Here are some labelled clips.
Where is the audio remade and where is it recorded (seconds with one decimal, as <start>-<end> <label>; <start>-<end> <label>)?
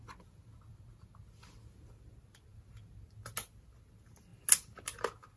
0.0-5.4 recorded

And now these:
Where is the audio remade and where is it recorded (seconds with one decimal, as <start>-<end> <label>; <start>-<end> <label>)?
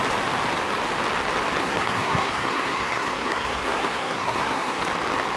0.0-1.6 recorded; 1.6-4.8 remade; 4.8-5.4 recorded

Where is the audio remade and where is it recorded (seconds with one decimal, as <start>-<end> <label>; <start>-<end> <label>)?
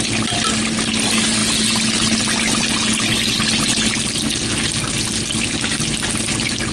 0.0-6.7 recorded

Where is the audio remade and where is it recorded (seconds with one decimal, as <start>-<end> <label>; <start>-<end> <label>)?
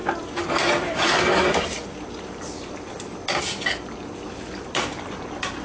0.0-5.6 recorded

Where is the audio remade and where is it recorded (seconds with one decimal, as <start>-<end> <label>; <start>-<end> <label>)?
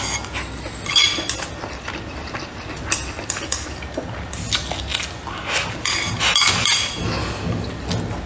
0.0-8.3 recorded